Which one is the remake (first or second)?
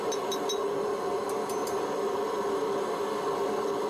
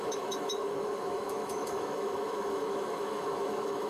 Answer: second